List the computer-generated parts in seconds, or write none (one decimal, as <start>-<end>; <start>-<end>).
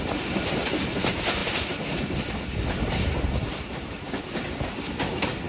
none